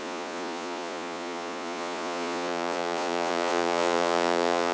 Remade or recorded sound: remade